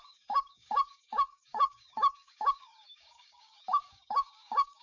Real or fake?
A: fake